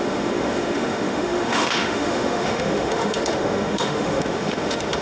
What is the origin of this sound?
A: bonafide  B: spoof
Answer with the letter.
B